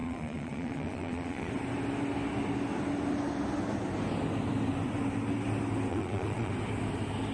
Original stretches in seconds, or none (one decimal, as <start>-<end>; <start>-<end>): 1.5-5.9; 6.5-7.3